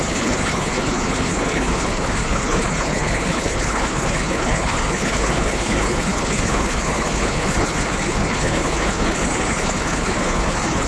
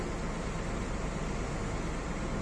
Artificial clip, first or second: first